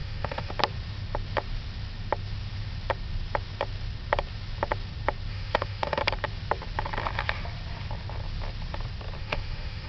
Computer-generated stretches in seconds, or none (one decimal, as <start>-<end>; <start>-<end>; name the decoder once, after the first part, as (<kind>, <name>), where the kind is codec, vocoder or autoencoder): 0.0-0.5 (autoencoder, DAC-VAE); 5.3-6.0; 9.2-9.9